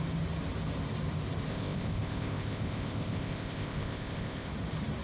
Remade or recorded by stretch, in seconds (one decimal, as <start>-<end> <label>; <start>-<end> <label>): 0.0-1.5 recorded; 1.5-4.5 remade; 4.5-5.0 recorded